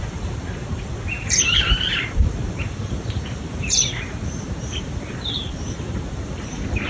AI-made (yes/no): yes